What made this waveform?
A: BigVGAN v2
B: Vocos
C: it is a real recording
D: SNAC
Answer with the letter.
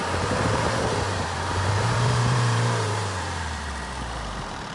A